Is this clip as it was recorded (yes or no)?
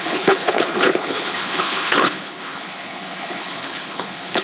no